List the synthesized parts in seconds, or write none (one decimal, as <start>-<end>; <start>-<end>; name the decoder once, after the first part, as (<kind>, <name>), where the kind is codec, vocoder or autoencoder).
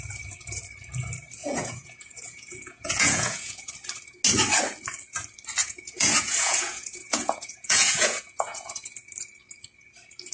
1.4-3.7 (vocoder, Vocos); 5.6-8.9